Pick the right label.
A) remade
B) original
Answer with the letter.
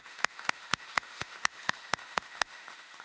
A